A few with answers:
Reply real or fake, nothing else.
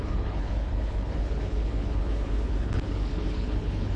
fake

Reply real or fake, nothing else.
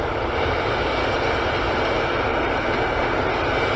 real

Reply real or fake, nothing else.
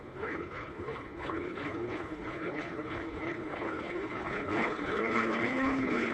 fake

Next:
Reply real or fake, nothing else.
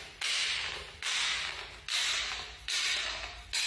real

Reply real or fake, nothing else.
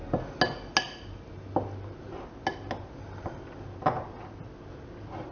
real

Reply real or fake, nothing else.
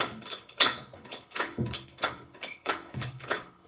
fake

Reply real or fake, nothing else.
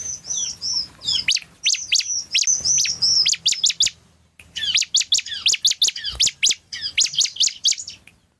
real